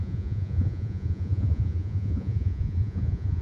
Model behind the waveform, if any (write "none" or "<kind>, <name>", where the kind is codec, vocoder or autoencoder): vocoder, Vocos